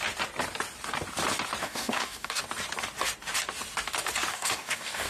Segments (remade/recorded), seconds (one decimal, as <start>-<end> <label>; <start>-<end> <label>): 0.0-1.6 recorded; 1.6-2.4 remade; 2.4-4.3 recorded; 4.3-5.1 remade